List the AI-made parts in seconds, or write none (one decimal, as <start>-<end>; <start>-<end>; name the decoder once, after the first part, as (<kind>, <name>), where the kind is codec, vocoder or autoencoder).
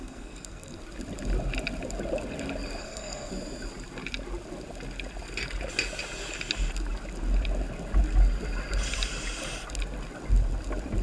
0.0-0.8 (codec, SNAC); 2.8-3.3